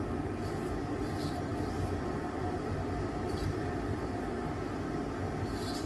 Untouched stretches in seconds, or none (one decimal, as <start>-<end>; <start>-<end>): 0.0-1.5; 5.0-5.9